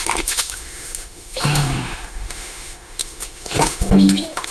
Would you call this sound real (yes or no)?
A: no